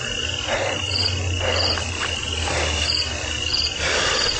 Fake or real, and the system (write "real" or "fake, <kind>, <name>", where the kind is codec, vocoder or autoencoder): real